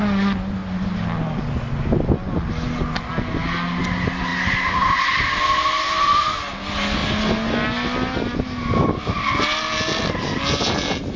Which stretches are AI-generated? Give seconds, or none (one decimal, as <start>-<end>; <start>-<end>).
none